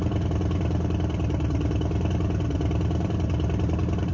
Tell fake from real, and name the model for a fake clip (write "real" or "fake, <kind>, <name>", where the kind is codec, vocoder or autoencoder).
fake, vocoder, BigVGAN v2